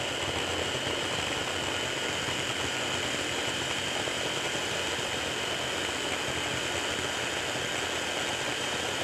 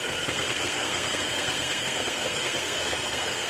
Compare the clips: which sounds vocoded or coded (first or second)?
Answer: second